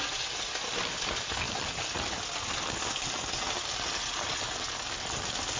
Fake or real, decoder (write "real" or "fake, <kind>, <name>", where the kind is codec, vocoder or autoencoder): real